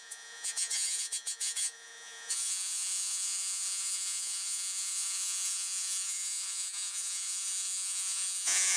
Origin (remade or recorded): remade